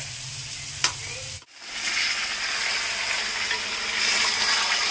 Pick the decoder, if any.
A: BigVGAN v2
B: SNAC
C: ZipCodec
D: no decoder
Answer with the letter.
D